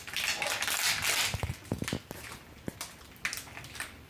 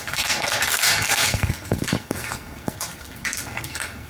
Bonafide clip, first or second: first